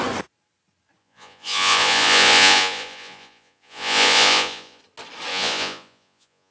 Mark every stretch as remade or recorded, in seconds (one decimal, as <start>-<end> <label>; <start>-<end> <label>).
0.0-1.0 recorded; 1.0-4.8 remade; 4.8-5.3 recorded; 5.3-6.5 remade